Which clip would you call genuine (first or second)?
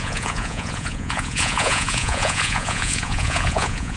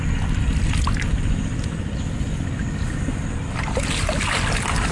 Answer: second